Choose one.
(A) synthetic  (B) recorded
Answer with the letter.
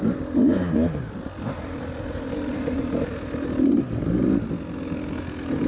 B